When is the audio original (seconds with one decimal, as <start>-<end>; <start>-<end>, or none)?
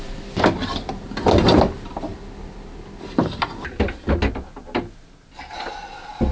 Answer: 0.0-6.3